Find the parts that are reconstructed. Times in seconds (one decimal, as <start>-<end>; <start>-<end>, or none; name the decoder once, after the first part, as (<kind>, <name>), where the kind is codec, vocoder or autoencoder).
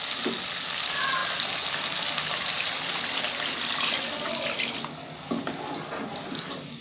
none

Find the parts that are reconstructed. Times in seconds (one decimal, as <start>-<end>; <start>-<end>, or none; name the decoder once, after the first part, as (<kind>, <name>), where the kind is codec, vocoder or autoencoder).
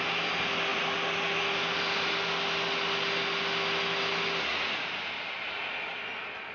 4.5-5.0 (vocoder, Vocos)